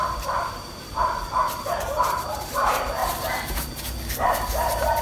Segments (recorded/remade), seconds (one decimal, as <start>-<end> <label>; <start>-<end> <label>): 0.0-3.0 remade; 3.0-4.1 recorded; 4.1-5.0 remade